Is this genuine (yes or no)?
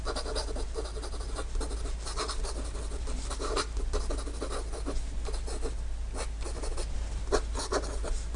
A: yes